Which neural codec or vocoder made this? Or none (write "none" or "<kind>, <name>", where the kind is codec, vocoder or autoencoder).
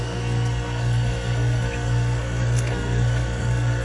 codec, SNAC